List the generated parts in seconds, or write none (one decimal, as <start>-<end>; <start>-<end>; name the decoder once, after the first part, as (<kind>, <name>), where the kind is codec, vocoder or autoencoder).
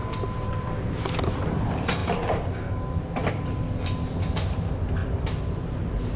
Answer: none